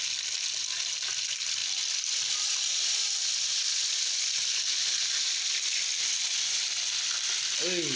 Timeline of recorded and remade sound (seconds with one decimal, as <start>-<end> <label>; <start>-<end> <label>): 0.0-8.0 recorded